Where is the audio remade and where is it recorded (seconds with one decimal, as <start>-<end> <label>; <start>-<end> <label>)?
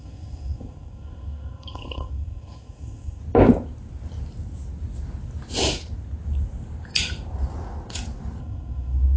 0.0-3.2 remade; 3.2-8.4 recorded; 8.4-9.2 remade